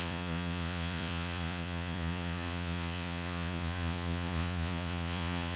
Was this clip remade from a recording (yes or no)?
yes